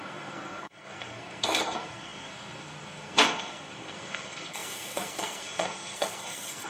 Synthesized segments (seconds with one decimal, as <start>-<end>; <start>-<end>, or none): 0.0-6.7